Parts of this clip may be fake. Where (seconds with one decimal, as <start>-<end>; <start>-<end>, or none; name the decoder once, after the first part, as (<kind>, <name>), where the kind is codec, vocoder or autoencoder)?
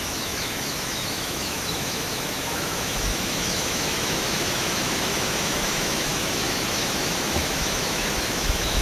0.0-8.8 (autoencoder, DAC-VAE)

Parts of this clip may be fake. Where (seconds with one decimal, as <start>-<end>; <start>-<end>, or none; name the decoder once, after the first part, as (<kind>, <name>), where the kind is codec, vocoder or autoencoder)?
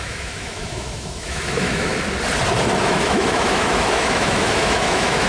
0.0-1.9 (autoencoder, DAC-VAE); 2.8-5.3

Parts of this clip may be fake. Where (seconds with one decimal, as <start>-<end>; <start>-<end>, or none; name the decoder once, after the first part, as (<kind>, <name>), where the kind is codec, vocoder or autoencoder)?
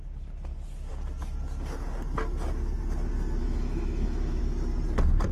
3.4-4.4 (autoencoder, DAC-VAE)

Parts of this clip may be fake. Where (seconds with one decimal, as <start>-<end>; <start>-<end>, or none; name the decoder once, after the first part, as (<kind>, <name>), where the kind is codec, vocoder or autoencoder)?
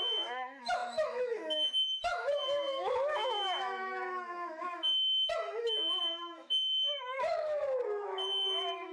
0.0-8.9 (autoencoder, DAC-VAE)